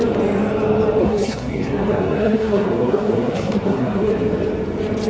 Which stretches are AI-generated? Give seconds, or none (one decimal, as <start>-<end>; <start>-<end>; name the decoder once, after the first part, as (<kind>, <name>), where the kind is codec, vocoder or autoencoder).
1.0-4.1 (codec, SNAC)